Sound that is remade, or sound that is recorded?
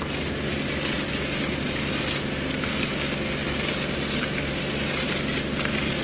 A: recorded